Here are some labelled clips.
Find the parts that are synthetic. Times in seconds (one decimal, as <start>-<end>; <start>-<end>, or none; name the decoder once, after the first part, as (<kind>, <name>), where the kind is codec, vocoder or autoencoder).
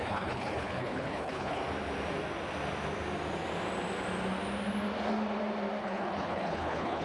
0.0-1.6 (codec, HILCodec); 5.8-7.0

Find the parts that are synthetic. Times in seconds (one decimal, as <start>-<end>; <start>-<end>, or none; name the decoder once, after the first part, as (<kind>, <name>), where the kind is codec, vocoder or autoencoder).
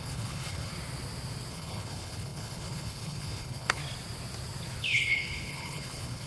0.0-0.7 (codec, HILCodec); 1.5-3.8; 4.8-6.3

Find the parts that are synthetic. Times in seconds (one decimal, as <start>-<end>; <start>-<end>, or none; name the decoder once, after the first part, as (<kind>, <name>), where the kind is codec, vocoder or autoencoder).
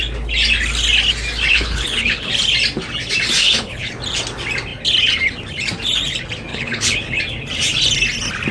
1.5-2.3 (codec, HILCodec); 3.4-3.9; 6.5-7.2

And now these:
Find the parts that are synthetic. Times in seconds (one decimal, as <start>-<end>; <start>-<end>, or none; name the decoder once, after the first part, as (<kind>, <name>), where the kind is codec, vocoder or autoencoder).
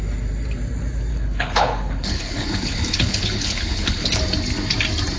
1.1-4.2 (codec, HILCodec)